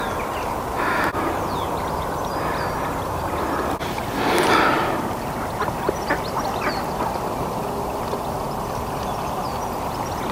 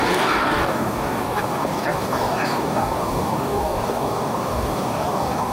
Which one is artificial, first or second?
second